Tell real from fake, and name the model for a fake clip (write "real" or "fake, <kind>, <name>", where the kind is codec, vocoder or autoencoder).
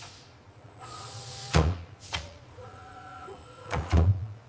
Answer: fake, vocoder, Vocos